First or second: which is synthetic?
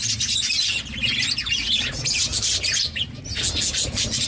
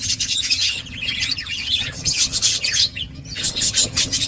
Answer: second